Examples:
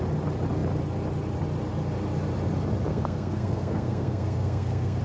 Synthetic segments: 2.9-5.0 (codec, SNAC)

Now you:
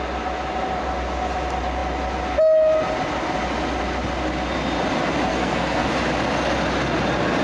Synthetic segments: 5.3-5.9 (codec, SNAC)